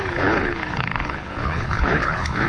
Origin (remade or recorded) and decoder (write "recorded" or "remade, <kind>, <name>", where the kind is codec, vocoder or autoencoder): remade, codec, HILCodec